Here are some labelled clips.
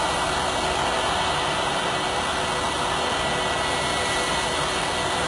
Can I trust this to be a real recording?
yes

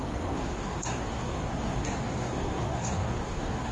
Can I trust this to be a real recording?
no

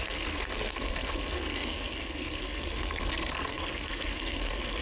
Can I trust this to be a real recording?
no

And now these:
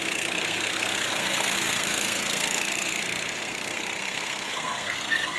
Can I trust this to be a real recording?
no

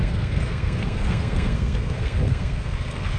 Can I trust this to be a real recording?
no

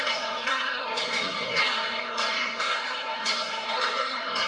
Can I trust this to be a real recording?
no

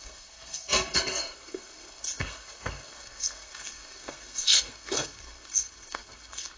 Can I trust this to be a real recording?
no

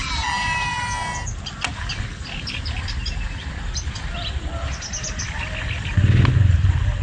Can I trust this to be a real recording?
yes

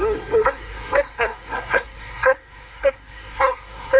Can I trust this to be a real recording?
no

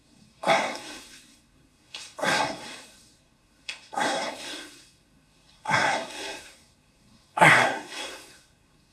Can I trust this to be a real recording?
no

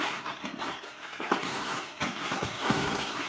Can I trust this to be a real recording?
no